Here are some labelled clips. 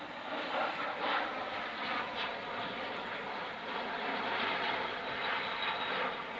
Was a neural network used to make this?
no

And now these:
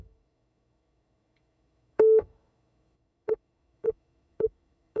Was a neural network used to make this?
yes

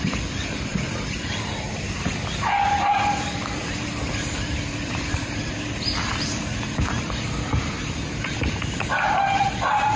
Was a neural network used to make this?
yes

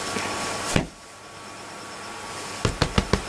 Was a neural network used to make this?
no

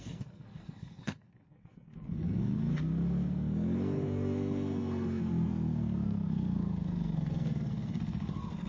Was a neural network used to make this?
yes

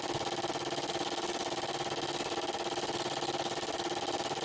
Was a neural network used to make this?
no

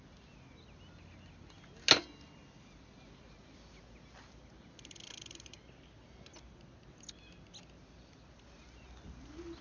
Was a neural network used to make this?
no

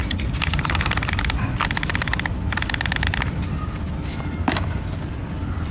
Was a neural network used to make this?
no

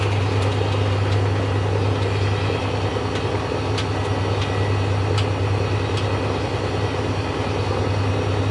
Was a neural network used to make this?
no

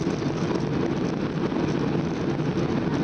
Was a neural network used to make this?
no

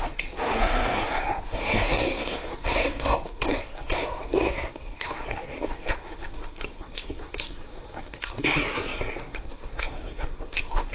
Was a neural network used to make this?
yes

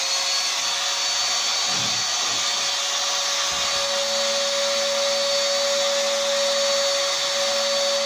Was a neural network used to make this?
no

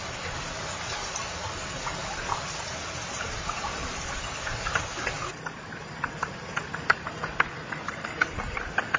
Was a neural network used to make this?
no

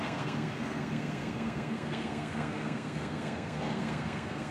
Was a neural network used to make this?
yes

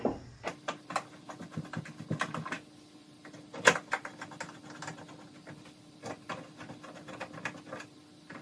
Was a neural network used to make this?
no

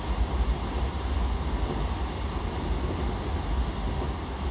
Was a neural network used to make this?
no